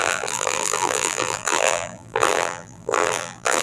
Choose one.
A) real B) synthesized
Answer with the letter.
B